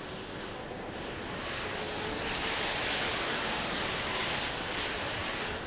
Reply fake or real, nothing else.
real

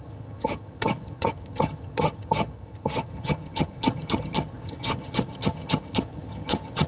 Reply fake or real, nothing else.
fake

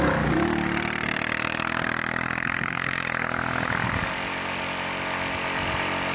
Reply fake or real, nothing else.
real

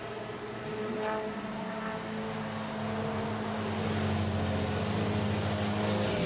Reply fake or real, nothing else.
real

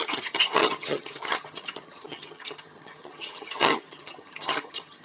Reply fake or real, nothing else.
fake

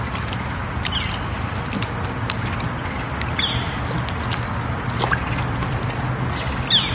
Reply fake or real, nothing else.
real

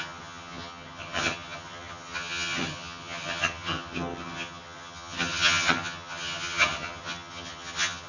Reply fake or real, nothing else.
fake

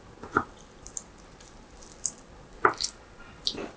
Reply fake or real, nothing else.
real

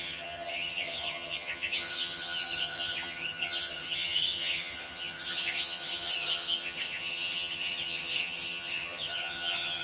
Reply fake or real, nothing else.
fake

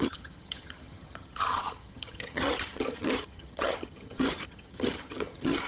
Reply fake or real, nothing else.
fake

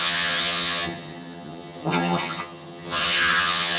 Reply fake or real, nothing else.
fake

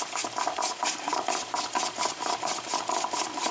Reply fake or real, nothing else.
real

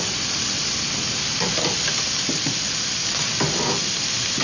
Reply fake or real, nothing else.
real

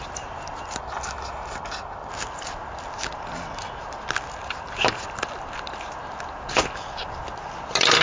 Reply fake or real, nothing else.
real